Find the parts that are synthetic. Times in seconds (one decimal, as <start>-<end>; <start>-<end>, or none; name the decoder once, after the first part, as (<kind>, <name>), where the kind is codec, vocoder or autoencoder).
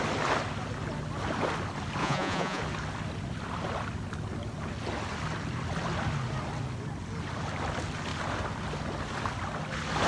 2.0-2.6 (vocoder, Vocos)